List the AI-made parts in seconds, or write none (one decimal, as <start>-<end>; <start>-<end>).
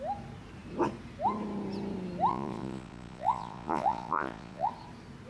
2.3-4.7